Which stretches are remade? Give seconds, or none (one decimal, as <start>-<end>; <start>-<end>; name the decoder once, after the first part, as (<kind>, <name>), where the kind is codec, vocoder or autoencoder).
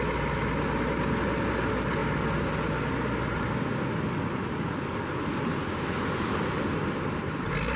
none